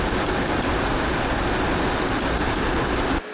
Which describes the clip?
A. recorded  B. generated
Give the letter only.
A